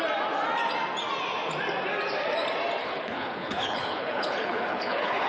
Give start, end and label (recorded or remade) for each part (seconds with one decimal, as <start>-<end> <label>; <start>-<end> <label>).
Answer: 0.0-2.8 recorded; 2.8-5.3 remade